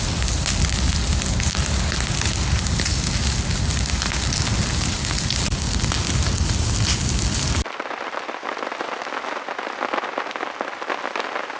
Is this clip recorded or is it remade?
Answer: recorded